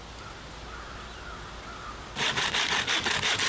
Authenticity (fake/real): real